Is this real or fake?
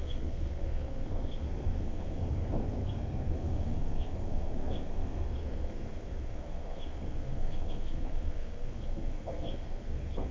fake